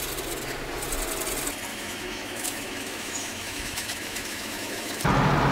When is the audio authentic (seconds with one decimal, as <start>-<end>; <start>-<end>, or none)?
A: 0.0-1.7; 5.0-5.5